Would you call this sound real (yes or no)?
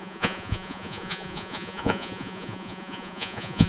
no